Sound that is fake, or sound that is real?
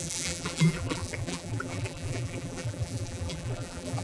fake